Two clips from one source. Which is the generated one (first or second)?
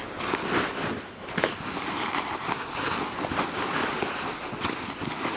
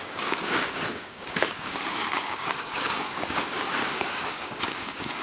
second